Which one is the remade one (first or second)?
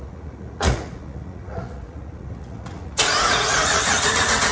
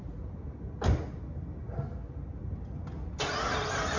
first